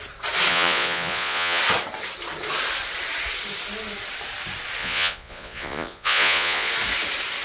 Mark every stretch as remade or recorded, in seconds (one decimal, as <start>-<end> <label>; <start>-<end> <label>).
0.0-0.5 recorded; 0.5-1.6 remade; 1.6-4.8 recorded; 4.8-6.7 remade; 6.7-7.4 recorded